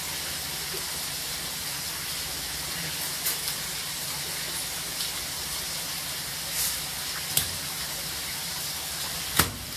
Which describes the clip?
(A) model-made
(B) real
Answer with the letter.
B